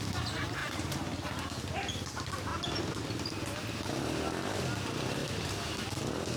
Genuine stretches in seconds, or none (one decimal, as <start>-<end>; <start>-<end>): 0.0-0.6; 1.4-5.2; 5.8-6.4